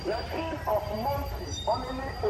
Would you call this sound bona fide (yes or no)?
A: no